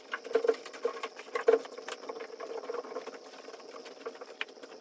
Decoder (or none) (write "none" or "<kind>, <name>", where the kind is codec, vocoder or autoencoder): none